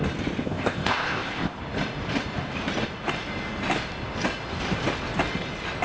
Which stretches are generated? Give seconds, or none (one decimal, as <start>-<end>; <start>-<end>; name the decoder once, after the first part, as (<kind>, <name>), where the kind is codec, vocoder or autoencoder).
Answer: 0.4-1.6 (codec, ZipCodec)